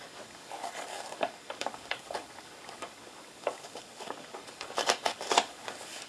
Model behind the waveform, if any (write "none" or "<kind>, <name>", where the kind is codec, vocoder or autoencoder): codec, DAC